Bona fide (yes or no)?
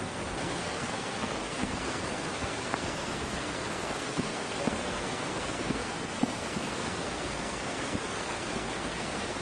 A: no